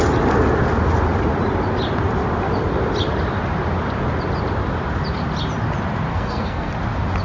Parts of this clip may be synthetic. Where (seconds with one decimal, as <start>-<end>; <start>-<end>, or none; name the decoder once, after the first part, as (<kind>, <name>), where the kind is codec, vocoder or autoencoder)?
6.1-6.7 (codec, SNAC)